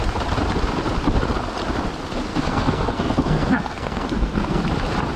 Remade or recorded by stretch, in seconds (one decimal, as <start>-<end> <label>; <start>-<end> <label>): 0.0-2.3 recorded; 2.3-4.6 remade; 4.6-5.2 recorded